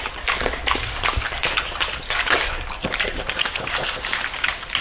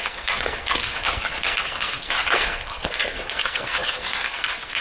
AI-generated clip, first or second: second